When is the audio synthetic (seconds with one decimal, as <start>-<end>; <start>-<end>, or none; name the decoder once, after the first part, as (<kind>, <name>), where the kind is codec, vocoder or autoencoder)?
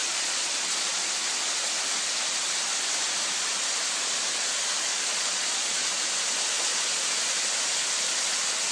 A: 0.0-1.0 (vocoder, Vocos); 5.1-5.9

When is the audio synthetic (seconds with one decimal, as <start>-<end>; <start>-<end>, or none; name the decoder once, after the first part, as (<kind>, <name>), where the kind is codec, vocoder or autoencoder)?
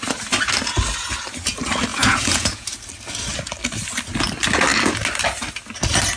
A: 1.9-2.8 (vocoder, Vocos)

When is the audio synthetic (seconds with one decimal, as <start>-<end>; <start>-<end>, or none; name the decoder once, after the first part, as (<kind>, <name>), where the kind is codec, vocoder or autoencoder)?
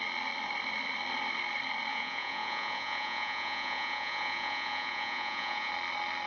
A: 1.9-5.7 (vocoder, Vocos)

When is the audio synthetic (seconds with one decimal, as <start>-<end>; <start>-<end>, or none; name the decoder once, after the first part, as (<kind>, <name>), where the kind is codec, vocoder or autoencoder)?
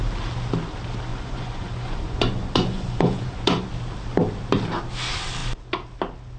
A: 1.1-3.7 (vocoder, Vocos)